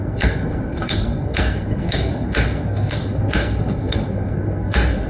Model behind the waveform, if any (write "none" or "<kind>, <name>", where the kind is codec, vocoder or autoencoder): codec, SNAC